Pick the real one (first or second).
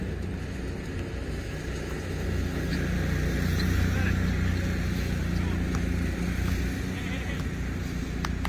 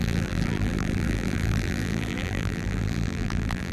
first